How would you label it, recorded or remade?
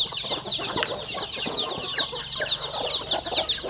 recorded